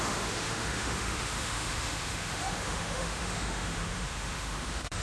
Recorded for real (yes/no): no